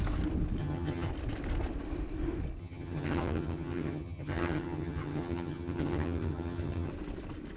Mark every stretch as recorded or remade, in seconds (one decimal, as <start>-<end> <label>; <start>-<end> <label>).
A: 0.0-0.6 recorded; 0.6-1.1 remade; 1.1-2.6 recorded; 2.6-6.9 remade; 6.9-7.6 recorded